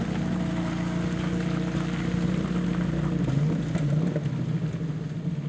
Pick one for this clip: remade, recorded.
recorded